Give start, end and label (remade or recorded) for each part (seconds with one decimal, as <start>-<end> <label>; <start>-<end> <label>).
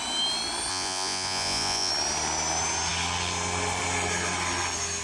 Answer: 0.0-0.7 recorded; 0.7-1.9 remade; 1.9-5.0 recorded